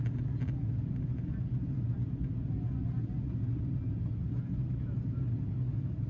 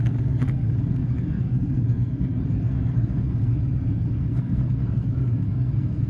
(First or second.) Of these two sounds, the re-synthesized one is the second